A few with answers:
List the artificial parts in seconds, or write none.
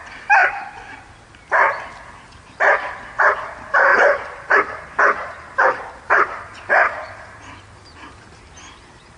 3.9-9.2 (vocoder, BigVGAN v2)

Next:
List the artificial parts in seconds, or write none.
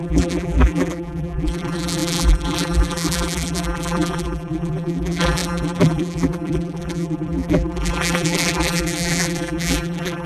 0.0-10.3 (vocoder, BigVGAN v2)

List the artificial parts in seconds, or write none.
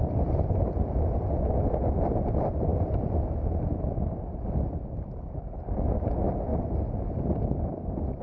none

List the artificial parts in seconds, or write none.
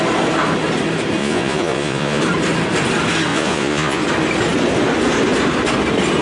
1.2-2.2 (vocoder, Vocos); 3.3-4.0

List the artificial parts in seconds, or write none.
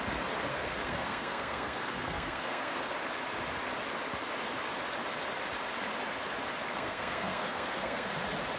0.5-2.9 (codec, SNAC); 6.7-8.1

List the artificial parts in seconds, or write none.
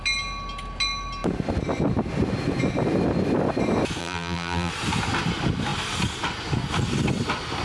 4.0-4.7 (vocoder, BigVGAN v2)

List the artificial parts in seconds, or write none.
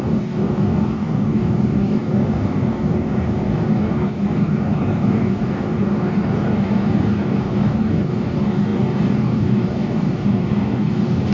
0.0-11.3 (codec, DAC)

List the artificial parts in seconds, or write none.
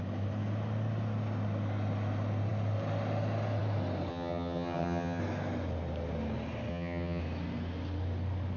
4.1-5.2 (vocoder, HiFi-GAN); 6.7-7.2